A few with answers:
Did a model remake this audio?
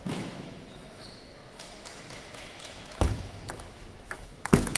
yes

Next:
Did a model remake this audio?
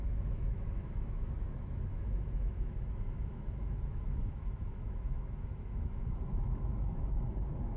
yes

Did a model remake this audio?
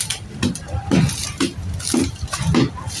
no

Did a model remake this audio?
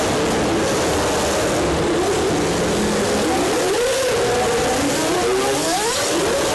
no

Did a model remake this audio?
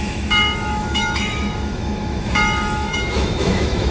yes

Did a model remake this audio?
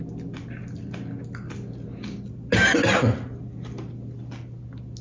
no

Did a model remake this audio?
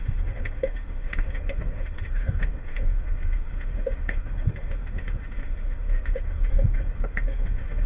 yes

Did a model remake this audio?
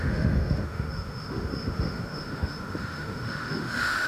yes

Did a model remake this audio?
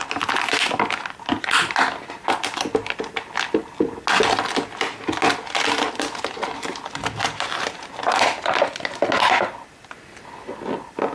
no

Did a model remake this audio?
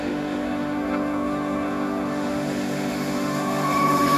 yes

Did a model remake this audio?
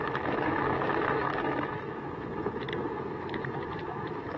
yes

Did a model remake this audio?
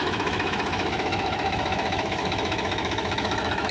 yes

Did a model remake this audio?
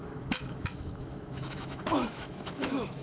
yes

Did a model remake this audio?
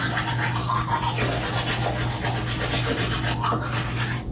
no